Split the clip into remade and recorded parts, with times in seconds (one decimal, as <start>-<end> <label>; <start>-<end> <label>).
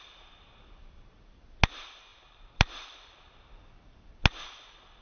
0.0-2.1 recorded; 2.1-3.6 remade; 3.6-5.0 recorded